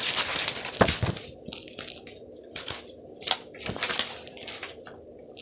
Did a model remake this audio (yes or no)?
yes